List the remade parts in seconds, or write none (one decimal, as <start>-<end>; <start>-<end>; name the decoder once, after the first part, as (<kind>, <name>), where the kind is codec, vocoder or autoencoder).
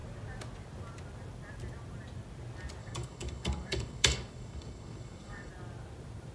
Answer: 2.8-5.5 (codec, DAC)